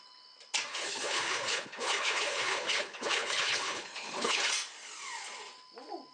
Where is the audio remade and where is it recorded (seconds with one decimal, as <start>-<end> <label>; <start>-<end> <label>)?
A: 0.0-0.7 recorded; 0.7-4.4 remade; 4.4-6.1 recorded